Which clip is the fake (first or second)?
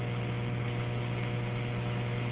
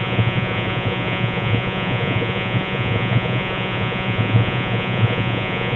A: second